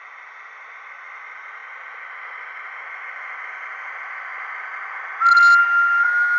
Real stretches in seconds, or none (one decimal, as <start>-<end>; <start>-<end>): 0.0-5.6